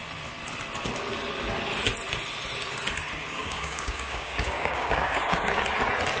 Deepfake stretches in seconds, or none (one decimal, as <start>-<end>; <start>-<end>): 3.4-5.6